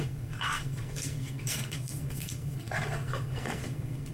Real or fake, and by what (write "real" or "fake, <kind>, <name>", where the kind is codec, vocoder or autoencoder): fake, codec, SNAC